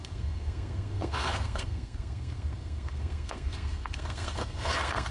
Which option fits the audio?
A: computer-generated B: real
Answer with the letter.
A